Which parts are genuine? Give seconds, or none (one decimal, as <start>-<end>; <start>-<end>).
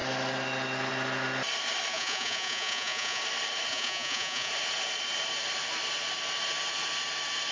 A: 0.0-1.9; 3.2-3.7; 4.5-7.5